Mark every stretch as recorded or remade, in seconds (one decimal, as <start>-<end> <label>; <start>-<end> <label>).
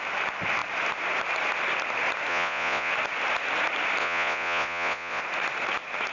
0.0-2.3 recorded; 2.3-2.9 remade; 2.9-4.0 recorded; 4.0-5.2 remade; 5.2-6.1 recorded